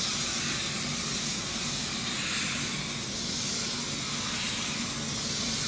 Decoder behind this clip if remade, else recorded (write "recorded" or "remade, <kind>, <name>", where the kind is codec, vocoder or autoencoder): recorded